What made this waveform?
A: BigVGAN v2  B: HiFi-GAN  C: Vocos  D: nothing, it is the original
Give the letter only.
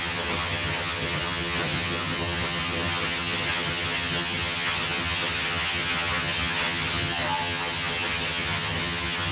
B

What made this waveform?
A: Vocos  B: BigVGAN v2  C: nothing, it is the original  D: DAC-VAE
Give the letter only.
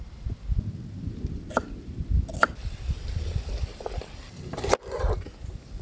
C